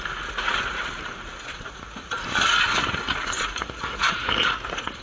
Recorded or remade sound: remade